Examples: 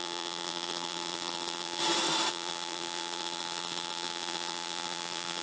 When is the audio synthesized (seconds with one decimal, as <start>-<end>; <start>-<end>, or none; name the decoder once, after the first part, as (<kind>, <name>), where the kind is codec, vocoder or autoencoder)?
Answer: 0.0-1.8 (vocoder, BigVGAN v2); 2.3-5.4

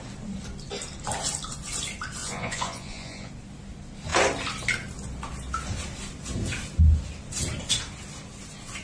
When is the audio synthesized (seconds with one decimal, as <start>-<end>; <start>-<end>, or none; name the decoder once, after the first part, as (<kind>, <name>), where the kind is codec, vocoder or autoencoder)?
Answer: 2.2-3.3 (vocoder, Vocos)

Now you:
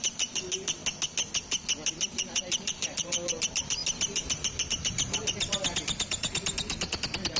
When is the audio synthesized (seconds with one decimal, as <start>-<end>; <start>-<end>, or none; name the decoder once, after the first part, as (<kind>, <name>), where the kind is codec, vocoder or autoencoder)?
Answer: 0.0-0.8 (vocoder, BigVGAN v2); 1.9-7.4